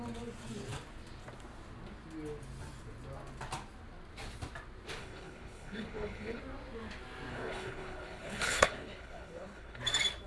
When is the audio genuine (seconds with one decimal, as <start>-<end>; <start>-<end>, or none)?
0.0-5.0; 6.4-7.3; 9.8-10.3